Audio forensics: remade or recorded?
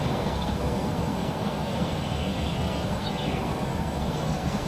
remade